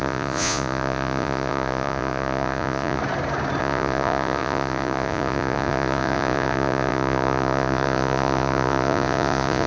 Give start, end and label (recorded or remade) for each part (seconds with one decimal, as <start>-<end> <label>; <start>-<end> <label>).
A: 0.0-3.0 remade; 3.0-3.6 recorded; 3.6-9.7 remade